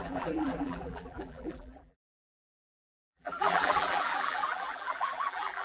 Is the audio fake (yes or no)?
yes